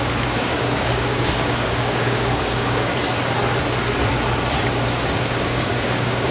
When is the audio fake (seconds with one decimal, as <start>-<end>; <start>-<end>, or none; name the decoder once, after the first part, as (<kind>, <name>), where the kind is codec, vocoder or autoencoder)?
0.0-2.9 (codec, DAC); 4.9-6.3